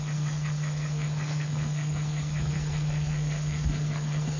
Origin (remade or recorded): remade